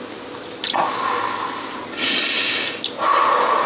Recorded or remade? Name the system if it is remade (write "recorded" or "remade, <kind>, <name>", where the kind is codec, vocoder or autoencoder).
recorded